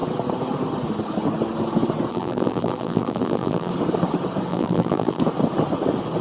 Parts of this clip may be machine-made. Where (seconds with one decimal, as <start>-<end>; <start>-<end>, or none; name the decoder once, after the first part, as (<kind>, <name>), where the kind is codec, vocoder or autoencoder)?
2.1-3.7 (vocoder, BigVGAN v2); 4.5-5.2